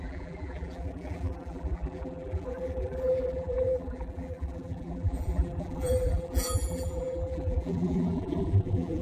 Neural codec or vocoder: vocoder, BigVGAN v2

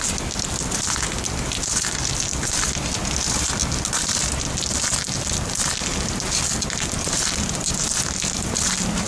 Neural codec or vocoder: none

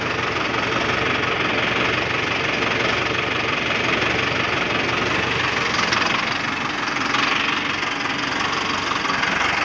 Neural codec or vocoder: none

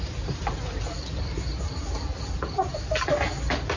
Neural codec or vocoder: none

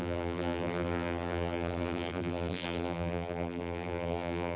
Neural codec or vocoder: vocoder, BigVGAN v2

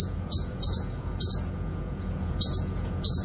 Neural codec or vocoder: vocoder, Vocos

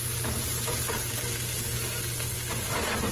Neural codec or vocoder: none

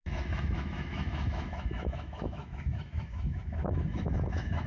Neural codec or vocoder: autoencoder, DAC-VAE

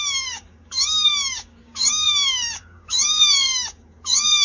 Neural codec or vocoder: codec, DAC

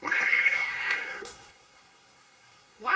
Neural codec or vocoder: codec, SNAC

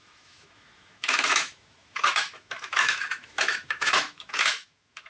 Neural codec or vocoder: autoencoder, DAC-VAE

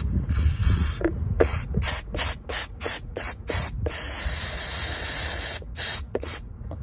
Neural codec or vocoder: vocoder, Vocos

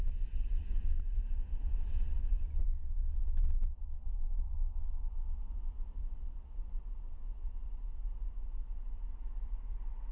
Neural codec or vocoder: vocoder, WaveNeXt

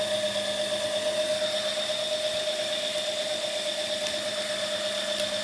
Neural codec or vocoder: none